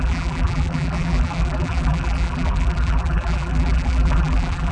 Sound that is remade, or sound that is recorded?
remade